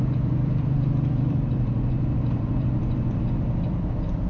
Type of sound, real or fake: fake